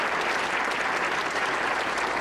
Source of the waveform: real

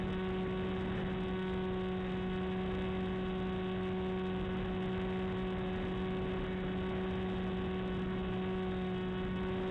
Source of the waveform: real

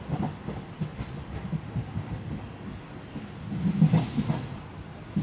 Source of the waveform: real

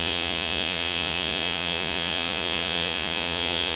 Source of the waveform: fake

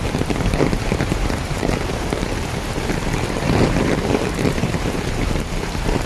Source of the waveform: fake